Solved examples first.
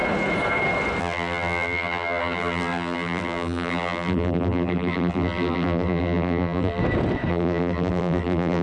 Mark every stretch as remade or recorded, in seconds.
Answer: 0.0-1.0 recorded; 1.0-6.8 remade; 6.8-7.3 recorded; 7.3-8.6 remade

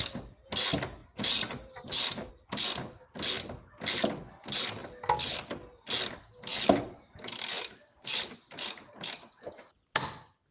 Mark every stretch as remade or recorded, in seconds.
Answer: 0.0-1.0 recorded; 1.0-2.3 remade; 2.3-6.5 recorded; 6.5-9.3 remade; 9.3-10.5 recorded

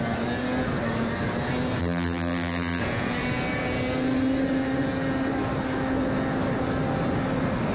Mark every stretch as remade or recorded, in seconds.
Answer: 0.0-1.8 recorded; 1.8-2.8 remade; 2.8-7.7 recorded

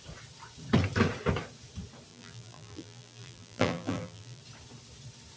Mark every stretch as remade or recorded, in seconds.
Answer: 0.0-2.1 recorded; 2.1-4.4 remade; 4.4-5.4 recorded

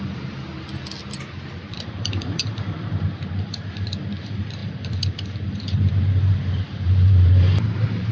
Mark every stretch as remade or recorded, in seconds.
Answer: 0.0-0.5 remade; 0.5-1.6 recorded; 1.6-8.1 remade

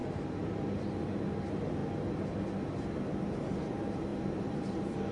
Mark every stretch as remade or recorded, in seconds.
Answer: 0.0-1.8 remade; 1.8-3.2 recorded; 3.2-5.1 remade